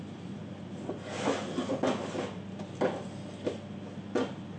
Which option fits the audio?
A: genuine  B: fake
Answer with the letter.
A